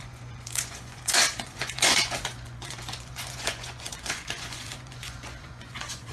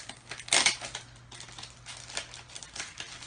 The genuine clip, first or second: second